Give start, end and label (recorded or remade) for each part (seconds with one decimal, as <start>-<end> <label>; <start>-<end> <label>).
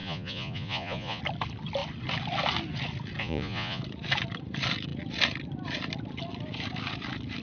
0.0-1.2 remade; 1.2-3.2 recorded; 3.2-3.8 remade; 3.8-7.4 recorded